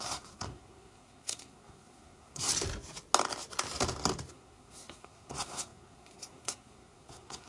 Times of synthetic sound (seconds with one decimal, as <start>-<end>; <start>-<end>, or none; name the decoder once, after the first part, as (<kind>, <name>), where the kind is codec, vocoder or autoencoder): 0.0-2.5 (codec, SNAC); 4.3-7.5